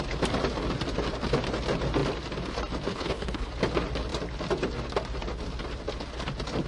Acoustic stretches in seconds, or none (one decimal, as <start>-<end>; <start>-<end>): 0.0-2.9; 3.5-6.7